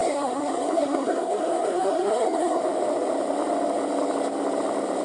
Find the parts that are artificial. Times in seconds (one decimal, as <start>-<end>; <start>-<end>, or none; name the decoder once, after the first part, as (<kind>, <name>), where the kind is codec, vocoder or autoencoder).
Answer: 0.0-2.6 (codec, SNAC)